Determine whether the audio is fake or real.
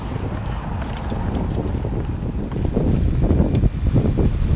real